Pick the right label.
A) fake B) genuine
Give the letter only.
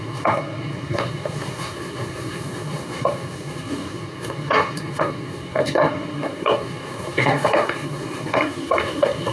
A